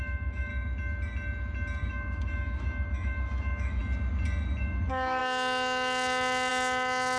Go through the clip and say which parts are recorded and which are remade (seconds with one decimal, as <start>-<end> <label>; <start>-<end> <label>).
0.0-0.5 remade; 0.5-1.9 recorded; 1.9-3.8 remade; 3.8-4.6 recorded; 4.6-7.2 remade